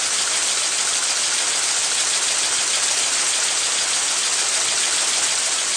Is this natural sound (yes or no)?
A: yes